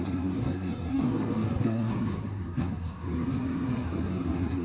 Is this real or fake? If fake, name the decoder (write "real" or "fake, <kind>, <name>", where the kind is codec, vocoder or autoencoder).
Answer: fake, codec, SNAC